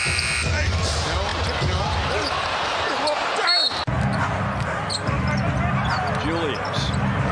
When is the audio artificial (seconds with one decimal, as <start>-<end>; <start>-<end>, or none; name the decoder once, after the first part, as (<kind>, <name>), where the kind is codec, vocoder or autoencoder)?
none